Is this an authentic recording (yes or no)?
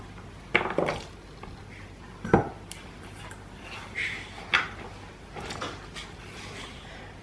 yes